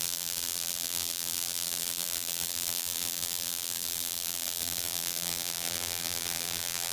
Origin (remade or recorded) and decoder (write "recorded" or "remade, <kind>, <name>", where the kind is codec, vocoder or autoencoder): remade, vocoder, BigVGAN v2